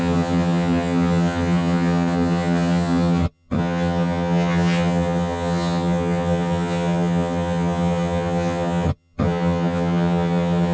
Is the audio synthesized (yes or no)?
yes